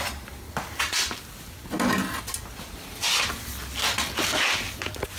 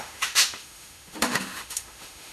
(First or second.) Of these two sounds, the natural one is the first